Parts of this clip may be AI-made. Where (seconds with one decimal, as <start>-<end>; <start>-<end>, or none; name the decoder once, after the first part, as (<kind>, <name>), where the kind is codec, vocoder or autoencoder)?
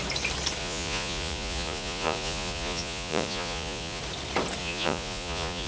0.6-4.0 (vocoder, Vocos); 4.6-5.7